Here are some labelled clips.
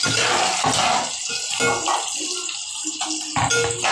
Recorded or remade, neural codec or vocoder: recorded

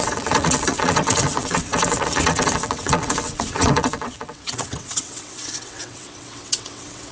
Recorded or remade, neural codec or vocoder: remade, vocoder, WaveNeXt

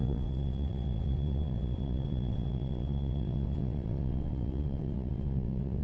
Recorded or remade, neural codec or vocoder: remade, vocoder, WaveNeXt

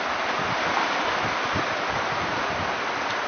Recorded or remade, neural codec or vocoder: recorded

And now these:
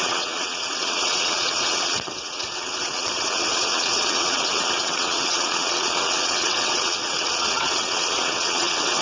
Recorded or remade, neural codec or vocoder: remade, vocoder, WaveNeXt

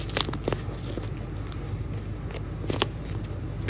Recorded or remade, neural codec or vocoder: recorded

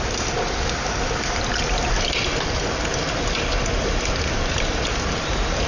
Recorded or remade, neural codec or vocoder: recorded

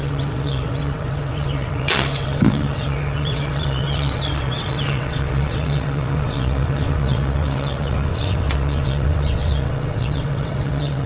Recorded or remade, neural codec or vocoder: remade, vocoder, WaveNeXt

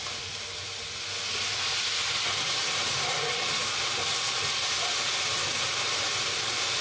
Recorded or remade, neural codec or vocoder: recorded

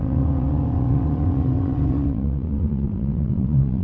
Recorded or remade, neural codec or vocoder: remade, vocoder, WaveNeXt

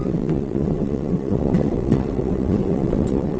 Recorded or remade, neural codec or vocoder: remade, vocoder, WaveNeXt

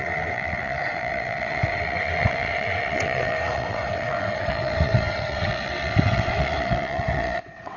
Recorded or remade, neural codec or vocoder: remade, vocoder, WaveNeXt